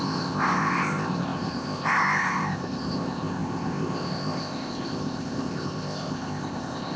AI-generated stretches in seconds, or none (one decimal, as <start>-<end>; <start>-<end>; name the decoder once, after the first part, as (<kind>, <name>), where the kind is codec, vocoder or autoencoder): 0.0-7.0 (codec, ZipCodec)